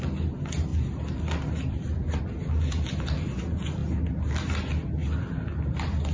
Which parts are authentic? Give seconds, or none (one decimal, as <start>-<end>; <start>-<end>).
0.0-6.1